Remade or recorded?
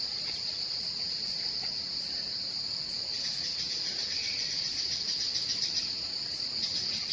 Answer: recorded